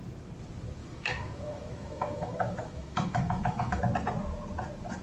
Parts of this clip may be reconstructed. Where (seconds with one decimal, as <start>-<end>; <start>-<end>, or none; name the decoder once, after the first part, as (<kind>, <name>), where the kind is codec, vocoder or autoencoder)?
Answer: 0.8-3.8 (autoencoder, DAC-VAE)